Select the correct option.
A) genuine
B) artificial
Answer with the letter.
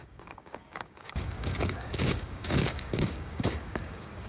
B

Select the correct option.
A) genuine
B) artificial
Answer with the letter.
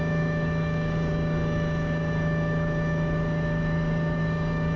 B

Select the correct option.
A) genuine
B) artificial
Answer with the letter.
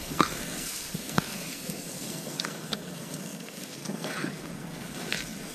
B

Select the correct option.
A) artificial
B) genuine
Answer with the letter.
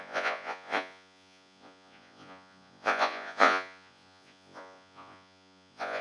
A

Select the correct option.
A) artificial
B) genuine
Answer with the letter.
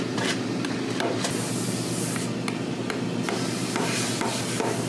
B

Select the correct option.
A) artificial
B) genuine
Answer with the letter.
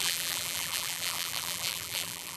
A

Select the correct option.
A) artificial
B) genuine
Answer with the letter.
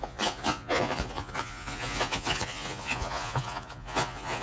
A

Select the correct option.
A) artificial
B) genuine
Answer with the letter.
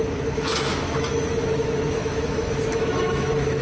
A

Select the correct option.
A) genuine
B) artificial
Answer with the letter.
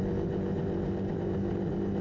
A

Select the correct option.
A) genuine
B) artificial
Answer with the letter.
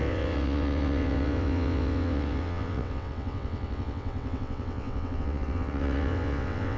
B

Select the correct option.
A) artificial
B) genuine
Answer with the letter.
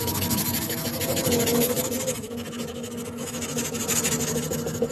A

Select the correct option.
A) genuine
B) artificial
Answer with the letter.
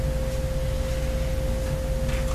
A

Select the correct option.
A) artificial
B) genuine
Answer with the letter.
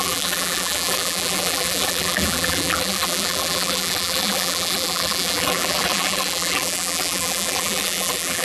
A